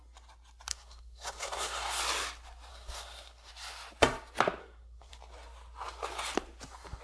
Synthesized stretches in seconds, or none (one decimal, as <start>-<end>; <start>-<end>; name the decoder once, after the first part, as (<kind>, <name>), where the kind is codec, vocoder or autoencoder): 0.7-2.0 (codec, SNAC); 2.7-3.5; 4.6-5.1